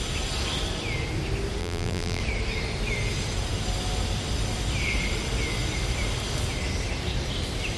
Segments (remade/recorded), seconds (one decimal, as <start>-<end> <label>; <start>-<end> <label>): 0.0-1.6 recorded; 1.6-2.2 remade; 2.2-7.8 recorded